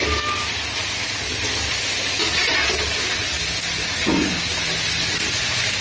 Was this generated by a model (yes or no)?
no